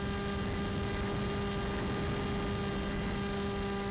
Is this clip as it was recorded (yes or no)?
yes